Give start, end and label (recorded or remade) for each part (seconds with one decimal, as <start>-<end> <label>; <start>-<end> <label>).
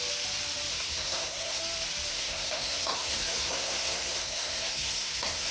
0.0-0.7 recorded; 0.7-1.6 remade; 1.6-2.1 recorded; 2.1-5.5 remade